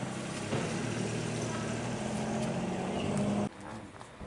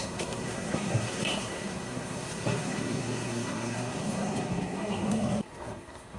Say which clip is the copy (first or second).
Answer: second